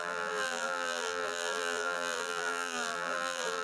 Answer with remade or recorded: remade